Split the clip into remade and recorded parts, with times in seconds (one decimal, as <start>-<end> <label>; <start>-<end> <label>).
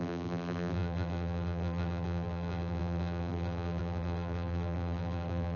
0.0-5.6 remade